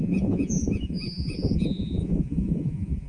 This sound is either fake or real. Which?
fake